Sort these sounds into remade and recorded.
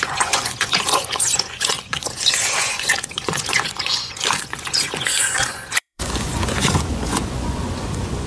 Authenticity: remade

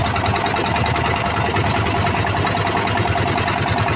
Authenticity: recorded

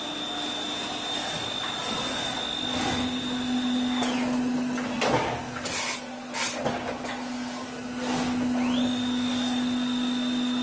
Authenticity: recorded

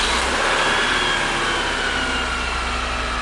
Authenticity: recorded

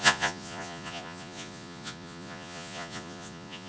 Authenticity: remade